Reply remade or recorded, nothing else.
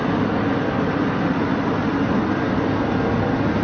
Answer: recorded